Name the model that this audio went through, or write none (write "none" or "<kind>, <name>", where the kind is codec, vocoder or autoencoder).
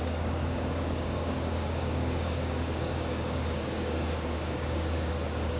codec, DAC